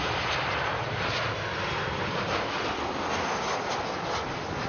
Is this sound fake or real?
real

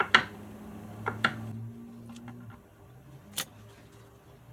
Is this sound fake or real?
real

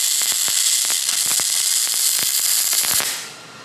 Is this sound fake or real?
real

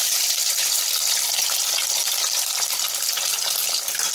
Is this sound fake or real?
real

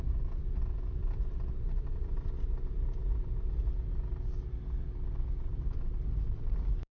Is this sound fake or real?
real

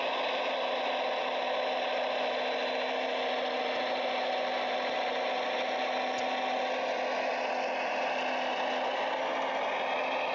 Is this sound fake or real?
real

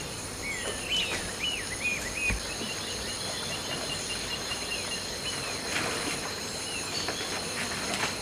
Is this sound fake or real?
real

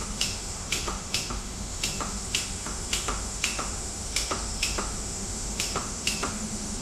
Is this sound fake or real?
fake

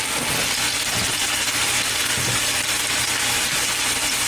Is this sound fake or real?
real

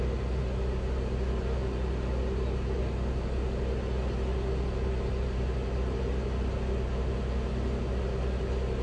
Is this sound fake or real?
real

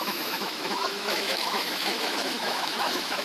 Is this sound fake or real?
fake